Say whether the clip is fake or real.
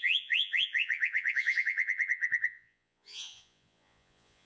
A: fake